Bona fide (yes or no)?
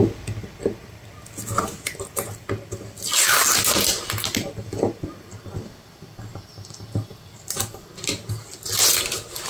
yes